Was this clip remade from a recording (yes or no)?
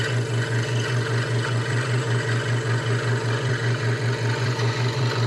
yes